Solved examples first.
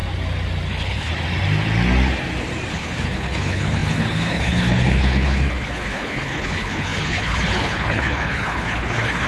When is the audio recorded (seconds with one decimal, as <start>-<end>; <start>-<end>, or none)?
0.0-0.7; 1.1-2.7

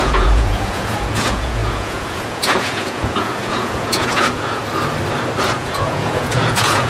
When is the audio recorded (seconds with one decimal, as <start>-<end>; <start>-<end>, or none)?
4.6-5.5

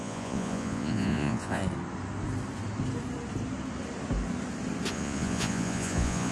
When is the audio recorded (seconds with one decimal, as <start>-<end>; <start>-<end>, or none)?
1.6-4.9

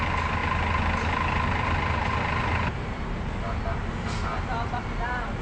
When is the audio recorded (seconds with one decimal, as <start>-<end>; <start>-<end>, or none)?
0.0-5.4

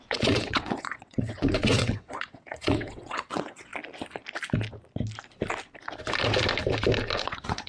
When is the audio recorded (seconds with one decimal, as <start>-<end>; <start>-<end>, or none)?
3.7-7.2